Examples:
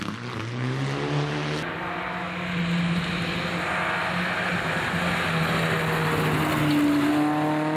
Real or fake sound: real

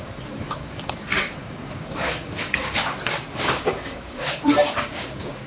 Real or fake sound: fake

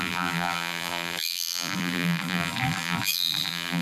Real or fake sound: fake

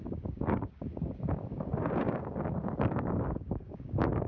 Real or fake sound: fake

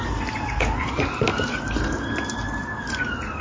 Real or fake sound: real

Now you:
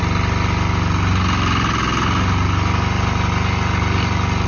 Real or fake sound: real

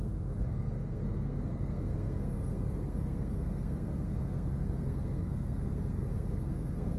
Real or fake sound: fake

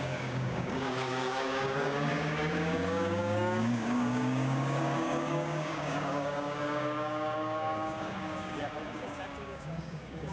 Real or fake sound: fake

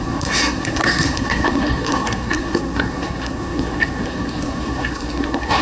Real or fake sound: fake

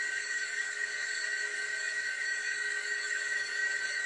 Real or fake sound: fake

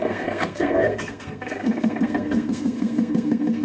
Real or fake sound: fake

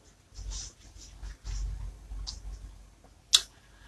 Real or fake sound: real